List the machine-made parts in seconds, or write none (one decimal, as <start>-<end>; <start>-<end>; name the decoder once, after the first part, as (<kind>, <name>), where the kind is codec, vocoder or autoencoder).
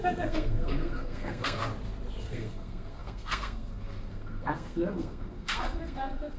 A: 0.0-1.6 (codec, SNAC); 2.2-6.4